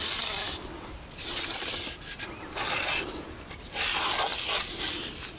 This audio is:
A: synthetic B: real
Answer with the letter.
B